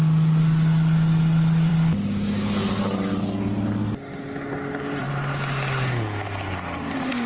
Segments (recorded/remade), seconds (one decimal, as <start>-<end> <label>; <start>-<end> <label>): 0.0-7.3 recorded